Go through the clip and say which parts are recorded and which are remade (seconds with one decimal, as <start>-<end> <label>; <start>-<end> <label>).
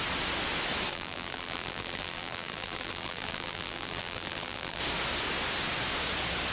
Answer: 0.0-0.9 recorded; 0.9-4.8 remade; 4.8-6.5 recorded